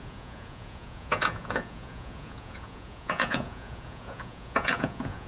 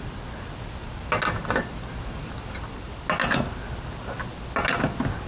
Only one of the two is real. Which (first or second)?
second